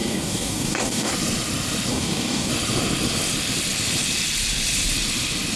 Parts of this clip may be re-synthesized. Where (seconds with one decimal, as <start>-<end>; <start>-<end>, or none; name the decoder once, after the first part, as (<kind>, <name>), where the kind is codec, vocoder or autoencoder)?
0.0-1.1 (codec, DAC); 1.9-2.5